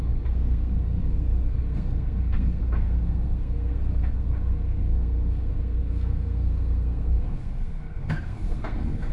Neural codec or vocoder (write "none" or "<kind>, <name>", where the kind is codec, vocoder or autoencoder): codec, SNAC